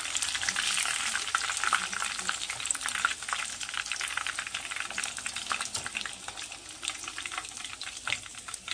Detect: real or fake real